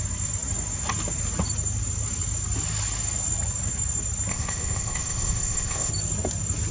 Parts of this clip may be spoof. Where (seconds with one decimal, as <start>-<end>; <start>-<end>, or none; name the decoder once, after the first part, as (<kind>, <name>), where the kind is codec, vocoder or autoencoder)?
4.3-5.9 (codec, ZipCodec)